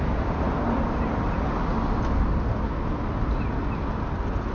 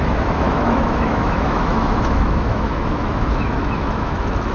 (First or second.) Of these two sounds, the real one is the first